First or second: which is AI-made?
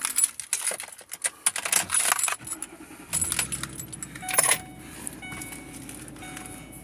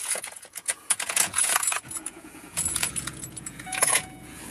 second